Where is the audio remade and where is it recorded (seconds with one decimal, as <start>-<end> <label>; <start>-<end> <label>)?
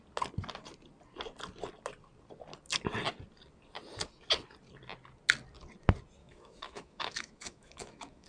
0.0-6.2 recorded; 6.2-8.3 remade